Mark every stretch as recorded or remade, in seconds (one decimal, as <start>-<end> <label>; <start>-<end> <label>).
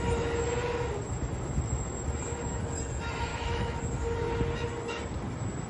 0.0-3.3 recorded; 3.3-3.8 remade; 3.8-5.7 recorded